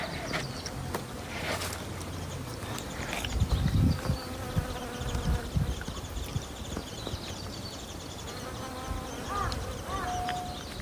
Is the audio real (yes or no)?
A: yes